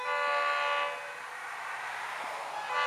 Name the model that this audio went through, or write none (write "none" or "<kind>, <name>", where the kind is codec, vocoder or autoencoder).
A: none